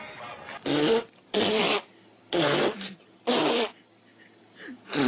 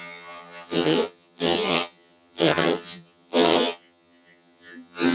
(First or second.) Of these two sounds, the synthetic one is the second